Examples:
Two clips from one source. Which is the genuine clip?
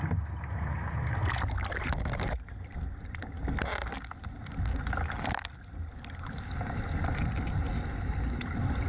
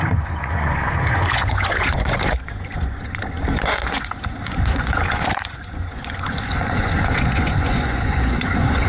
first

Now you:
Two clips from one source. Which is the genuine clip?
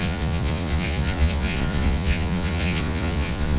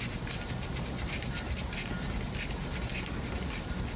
second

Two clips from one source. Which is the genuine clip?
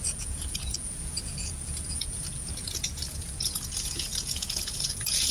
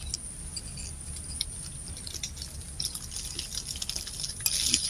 second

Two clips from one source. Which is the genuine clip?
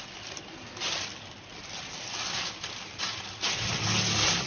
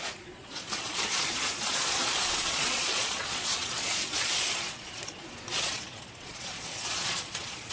first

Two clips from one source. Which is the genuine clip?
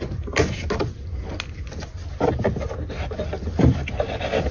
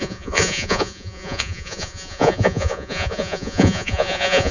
first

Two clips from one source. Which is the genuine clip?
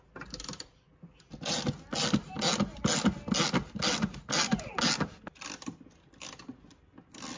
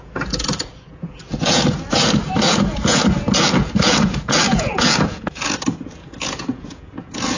first